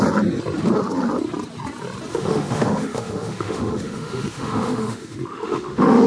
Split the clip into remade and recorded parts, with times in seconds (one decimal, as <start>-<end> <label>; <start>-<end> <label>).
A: 0.0-2.1 recorded; 2.1-6.1 remade